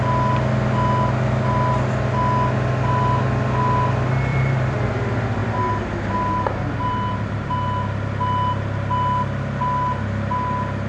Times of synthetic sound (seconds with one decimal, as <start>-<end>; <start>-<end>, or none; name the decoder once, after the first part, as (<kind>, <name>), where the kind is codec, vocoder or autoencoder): 4.3-4.9 (vocoder, BigVGAN v2)

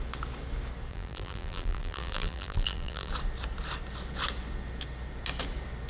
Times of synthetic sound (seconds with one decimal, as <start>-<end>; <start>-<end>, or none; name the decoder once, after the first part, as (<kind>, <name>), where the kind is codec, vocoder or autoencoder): 0.9-3.1 (vocoder, BigVGAN v2)